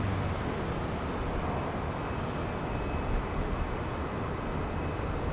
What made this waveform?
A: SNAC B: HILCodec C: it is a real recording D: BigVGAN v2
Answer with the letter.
C